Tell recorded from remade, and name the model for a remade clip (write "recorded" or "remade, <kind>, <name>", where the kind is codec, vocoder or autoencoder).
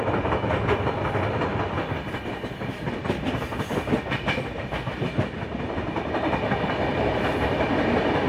recorded